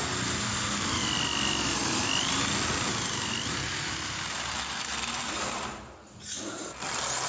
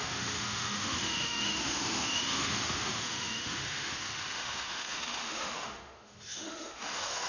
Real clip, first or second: first